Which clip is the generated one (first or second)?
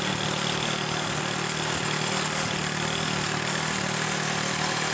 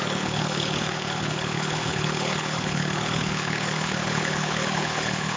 second